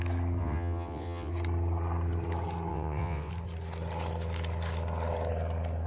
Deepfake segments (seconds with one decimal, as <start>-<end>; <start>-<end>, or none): 0.4-1.3; 2.7-3.3